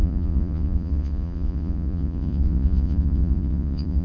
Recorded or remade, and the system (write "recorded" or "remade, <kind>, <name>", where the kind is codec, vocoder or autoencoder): remade, vocoder, Vocos